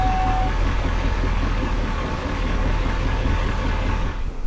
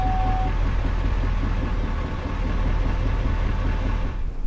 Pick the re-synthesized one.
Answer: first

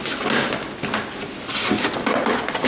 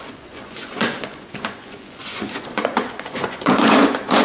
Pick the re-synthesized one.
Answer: second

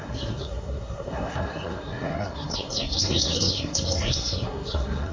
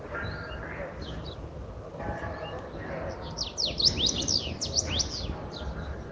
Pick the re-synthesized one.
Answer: first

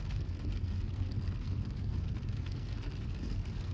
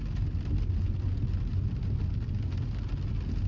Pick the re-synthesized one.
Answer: first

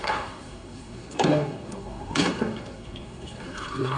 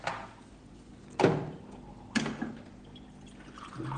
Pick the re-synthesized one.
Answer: first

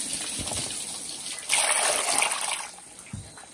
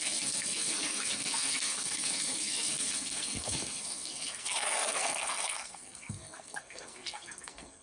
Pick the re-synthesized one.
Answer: second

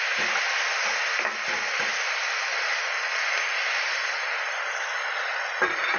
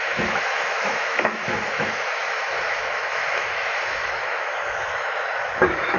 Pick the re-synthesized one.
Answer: second